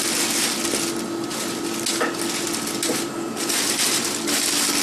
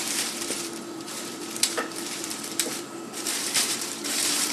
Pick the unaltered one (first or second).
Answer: first